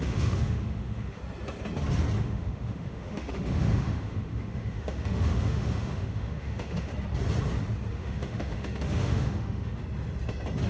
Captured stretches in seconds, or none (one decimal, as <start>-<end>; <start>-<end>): 1.2-2.2; 6.9-7.9; 9.8-10.7